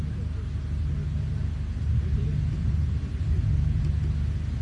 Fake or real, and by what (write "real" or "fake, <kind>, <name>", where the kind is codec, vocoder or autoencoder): real